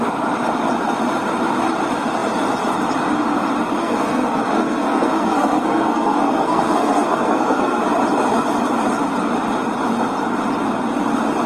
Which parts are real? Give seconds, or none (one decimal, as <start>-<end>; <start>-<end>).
0.0-3.8; 7.8-11.5